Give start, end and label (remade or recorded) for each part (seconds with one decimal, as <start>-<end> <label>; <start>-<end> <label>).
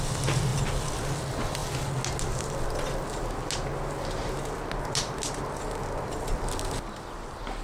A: 0.0-7.6 recorded